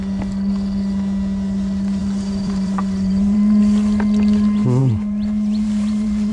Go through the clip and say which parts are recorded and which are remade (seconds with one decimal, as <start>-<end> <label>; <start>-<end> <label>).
0.0-2.0 recorded; 2.0-3.6 remade; 3.6-4.8 recorded; 4.8-6.3 remade